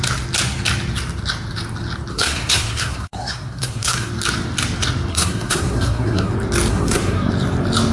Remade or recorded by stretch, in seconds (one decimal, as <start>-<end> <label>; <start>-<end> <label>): 0.0-2.1 recorded; 2.1-4.1 remade; 4.1-5.1 recorded; 5.1-6.3 remade; 6.3-6.7 recorded; 6.7-7.3 remade; 7.3-7.9 recorded